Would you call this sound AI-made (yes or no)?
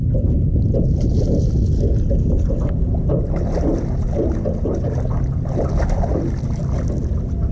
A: no